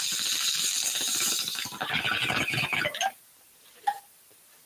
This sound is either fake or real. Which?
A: real